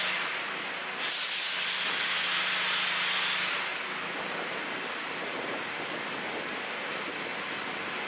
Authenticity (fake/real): real